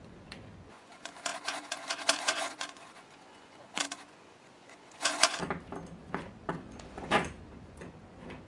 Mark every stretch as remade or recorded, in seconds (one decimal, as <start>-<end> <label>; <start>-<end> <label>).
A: 0.0-5.4 remade; 5.4-6.0 recorded; 6.0-8.5 remade